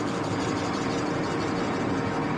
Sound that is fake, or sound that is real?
real